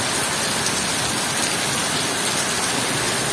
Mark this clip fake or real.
real